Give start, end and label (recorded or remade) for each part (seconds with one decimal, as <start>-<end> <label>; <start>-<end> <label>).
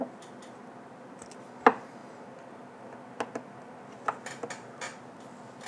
0.0-5.7 recorded